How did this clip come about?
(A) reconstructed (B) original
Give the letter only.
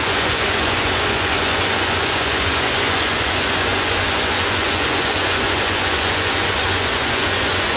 A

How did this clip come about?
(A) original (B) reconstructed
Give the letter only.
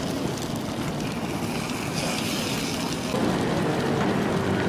A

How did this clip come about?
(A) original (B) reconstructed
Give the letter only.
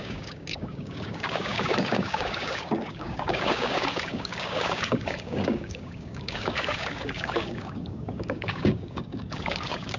B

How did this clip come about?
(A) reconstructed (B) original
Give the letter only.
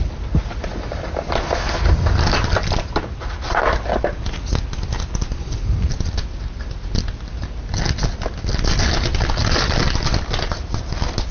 B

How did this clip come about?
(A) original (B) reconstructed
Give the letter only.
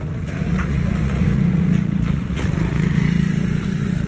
B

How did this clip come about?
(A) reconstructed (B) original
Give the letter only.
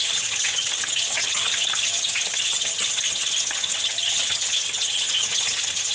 A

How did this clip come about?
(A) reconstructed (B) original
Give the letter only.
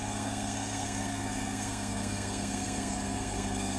A